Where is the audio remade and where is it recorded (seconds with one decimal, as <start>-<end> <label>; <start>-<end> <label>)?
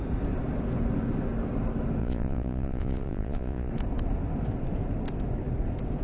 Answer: 0.0-2.0 recorded; 2.0-3.7 remade; 3.7-6.0 recorded